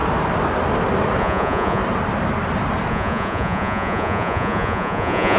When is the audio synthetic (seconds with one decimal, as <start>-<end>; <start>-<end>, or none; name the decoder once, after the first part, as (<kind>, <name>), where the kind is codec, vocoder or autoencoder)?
1.2-1.8 (vocoder, Vocos); 2.9-5.4